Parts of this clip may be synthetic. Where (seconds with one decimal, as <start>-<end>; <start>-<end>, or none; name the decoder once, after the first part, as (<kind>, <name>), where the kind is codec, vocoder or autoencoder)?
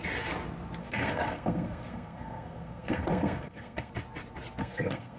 0.8-3.9 (codec, SNAC); 4.6-5.2